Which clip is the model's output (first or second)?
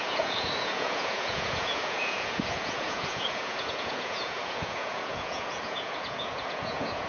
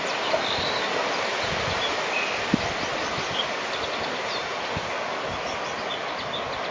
first